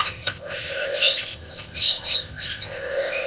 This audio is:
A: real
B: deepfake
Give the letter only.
B